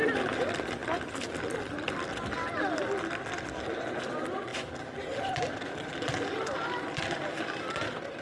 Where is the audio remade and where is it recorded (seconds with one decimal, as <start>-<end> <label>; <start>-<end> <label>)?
0.0-4.5 remade; 4.5-5.5 recorded; 5.5-8.2 remade

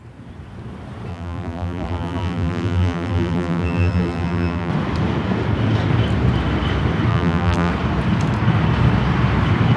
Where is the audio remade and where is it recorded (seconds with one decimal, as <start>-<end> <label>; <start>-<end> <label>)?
0.0-1.1 recorded; 1.1-4.7 remade; 4.7-7.1 recorded; 7.1-7.7 remade; 7.7-9.8 recorded

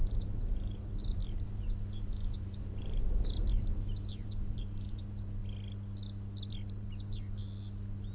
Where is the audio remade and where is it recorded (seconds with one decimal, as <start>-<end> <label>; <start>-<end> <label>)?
0.0-5.4 remade; 5.4-6.5 recorded; 6.5-7.4 remade; 7.4-8.1 recorded

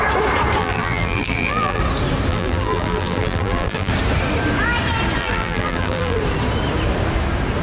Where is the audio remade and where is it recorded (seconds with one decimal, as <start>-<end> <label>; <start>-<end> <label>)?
0.0-0.6 recorded; 0.6-1.8 remade; 1.8-2.3 recorded; 2.3-3.9 remade; 3.9-5.2 recorded; 5.2-6.2 remade; 6.2-7.6 recorded